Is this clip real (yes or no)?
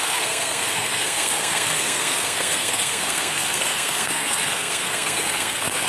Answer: no